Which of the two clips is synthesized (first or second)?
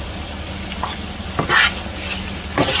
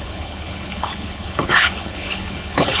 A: second